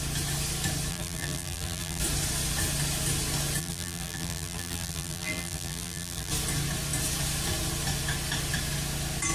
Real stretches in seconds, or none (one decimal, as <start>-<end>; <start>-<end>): 0.0-0.9; 2.0-3.6; 6.3-9.3